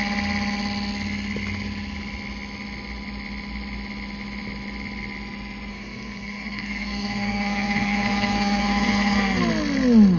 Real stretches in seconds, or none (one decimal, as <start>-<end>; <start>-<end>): 0.0-5.7; 9.4-10.2